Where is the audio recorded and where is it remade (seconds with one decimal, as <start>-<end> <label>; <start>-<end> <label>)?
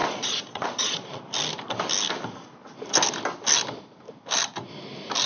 0.0-1.2 remade; 1.2-5.3 recorded